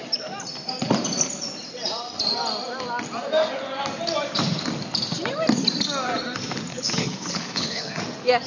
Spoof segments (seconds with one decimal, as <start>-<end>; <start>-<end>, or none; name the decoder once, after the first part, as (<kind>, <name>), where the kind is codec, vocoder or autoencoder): 6.7-8.0 (codec, HILCodec)